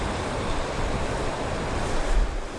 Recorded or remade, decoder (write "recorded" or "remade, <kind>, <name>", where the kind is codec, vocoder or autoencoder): recorded